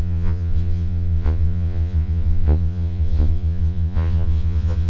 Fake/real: fake